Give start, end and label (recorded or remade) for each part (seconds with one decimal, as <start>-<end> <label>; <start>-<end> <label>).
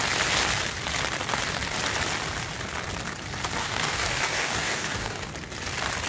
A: 0.0-3.6 recorded; 3.6-5.3 remade; 5.3-6.1 recorded